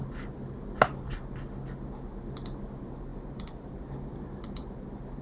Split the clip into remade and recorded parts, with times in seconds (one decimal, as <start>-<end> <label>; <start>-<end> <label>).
0.0-3.1 recorded; 3.1-3.7 remade; 3.7-5.2 recorded